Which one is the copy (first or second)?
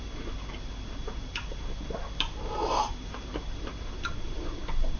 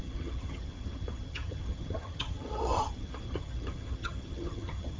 second